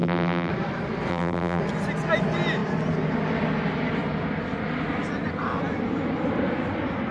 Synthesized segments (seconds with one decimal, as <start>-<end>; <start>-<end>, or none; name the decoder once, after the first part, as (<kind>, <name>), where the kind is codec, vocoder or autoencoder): 0.0-0.5 (vocoder, BigVGAN v2); 1.1-1.6